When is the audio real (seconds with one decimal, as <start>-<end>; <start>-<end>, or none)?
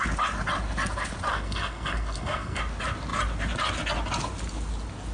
0.0-1.3; 2.6-5.1